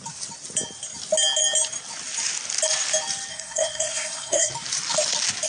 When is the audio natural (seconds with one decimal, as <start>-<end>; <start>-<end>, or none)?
0.0-3.3; 4.5-5.5